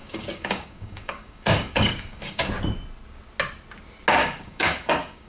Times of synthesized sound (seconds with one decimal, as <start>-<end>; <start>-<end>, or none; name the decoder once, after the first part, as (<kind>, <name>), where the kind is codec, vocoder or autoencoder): 0.0-2.5 (codec, DAC); 4.2-5.3